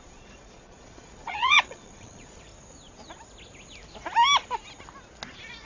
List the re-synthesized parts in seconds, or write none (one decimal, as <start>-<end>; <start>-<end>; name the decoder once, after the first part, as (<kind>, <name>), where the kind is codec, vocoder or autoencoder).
0.0-2.5 (vocoder, Vocos); 5.3-5.7